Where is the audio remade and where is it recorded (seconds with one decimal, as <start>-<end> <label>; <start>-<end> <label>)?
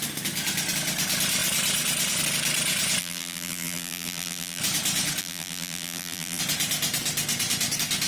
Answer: 0.0-3.0 recorded; 3.0-4.6 remade; 4.6-5.2 recorded; 5.2-6.4 remade; 6.4-8.1 recorded